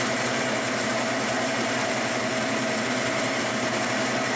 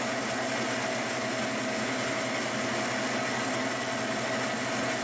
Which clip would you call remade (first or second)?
first